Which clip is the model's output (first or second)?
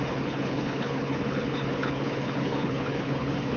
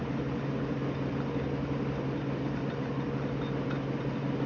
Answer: first